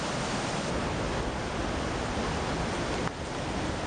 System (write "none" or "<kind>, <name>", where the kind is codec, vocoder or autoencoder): none